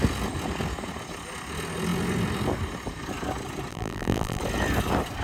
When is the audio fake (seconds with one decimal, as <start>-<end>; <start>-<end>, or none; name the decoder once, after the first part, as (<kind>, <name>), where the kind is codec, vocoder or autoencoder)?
3.7-4.4 (vocoder, BigVGAN v2)